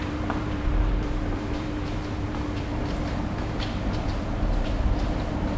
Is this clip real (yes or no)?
no